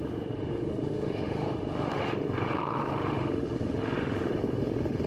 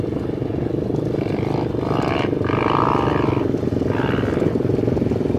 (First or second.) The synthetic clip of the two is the first